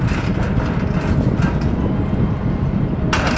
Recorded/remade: recorded